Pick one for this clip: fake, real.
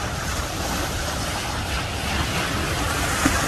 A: real